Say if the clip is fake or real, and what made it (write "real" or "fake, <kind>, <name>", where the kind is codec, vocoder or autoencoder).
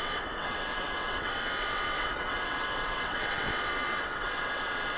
fake, vocoder, WaveNeXt